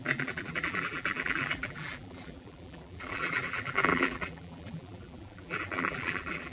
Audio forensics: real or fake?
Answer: fake